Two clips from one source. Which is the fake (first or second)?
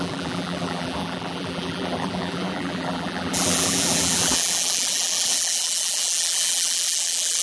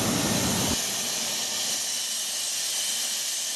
first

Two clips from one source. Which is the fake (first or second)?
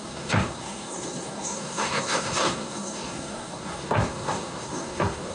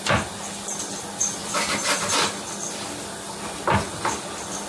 first